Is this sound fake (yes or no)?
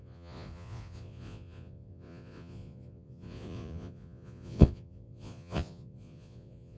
yes